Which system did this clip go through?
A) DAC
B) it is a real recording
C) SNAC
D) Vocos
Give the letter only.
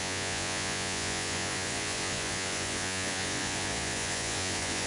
D